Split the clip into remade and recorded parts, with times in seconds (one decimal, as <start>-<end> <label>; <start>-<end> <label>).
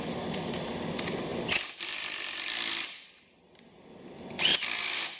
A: 0.0-5.2 recorded